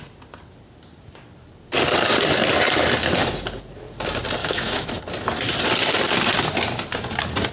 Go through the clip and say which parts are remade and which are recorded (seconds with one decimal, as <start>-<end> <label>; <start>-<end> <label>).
0.0-4.4 recorded; 4.4-5.0 remade; 5.0-7.5 recorded